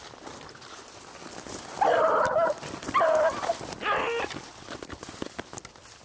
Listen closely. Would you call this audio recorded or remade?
recorded